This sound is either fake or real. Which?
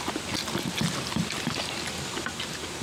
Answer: real